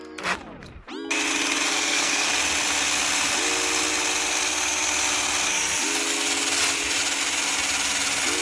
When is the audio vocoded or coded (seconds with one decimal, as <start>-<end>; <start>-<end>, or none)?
1.7-2.3